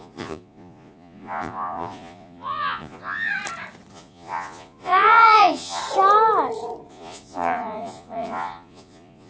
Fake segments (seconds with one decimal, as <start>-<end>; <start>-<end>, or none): 0.0-3.3; 3.9-5.8; 6.9-9.3